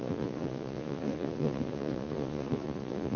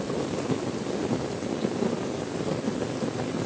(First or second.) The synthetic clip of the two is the first